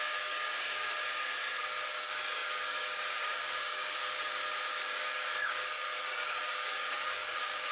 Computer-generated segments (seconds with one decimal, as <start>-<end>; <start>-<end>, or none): 0.0-1.0; 1.9-4.0; 4.7-7.7